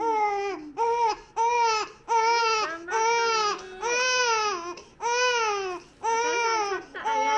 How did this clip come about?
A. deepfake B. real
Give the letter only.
B